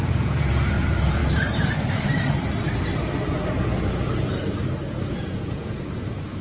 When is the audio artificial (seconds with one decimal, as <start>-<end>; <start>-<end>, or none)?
0.0-1.2; 5.0-6.4